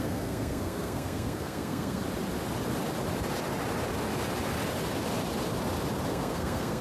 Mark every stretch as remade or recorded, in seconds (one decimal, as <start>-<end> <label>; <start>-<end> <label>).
0.0-2.0 remade; 2.0-6.1 recorded; 6.1-6.8 remade